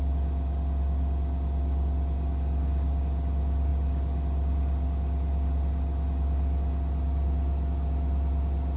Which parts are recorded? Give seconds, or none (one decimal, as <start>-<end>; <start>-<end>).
0.0-8.8

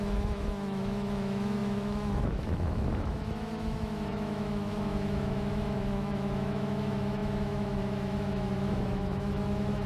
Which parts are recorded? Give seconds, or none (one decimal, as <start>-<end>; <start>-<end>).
none

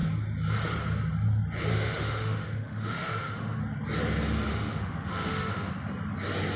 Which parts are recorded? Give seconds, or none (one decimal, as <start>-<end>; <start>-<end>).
0.0-1.7; 3.6-4.5; 5.7-6.6

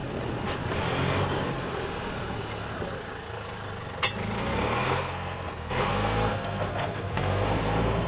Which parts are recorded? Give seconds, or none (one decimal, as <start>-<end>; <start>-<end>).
0.0-4.4

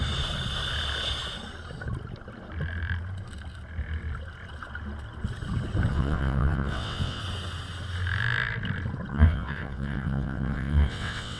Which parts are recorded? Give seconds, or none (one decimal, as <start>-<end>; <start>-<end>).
0.0-5.9; 7.2-9.1

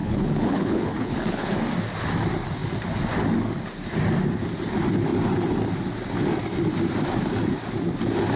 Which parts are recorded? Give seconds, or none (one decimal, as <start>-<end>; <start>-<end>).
1.6-8.4